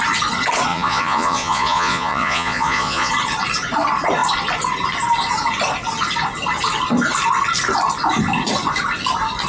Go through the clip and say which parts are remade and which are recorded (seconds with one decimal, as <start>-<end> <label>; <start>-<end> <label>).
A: 0.0-0.7 recorded; 0.7-3.1 remade; 3.1-9.5 recorded